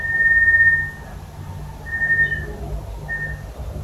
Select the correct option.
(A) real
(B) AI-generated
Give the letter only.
A